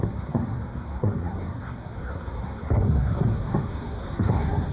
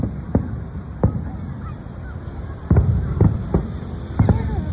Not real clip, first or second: first